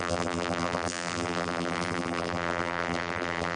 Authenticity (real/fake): fake